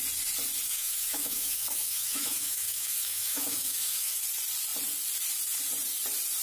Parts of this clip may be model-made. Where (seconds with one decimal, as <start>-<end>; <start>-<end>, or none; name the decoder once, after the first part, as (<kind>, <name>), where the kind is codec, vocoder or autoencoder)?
0.7-4.2 (autoencoder, DAC-VAE)